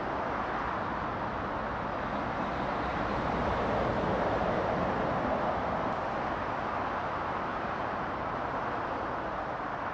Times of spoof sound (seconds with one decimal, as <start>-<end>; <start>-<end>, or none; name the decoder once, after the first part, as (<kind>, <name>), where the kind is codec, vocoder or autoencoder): 2.9-5.5 (vocoder, BigVGAN v2); 7.5-8.3